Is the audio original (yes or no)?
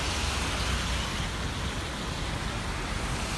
yes